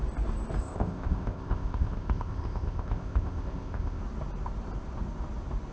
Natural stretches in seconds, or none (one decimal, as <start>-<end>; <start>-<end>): 0.0-0.6; 4.0-5.7